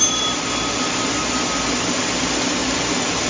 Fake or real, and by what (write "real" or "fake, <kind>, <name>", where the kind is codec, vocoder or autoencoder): real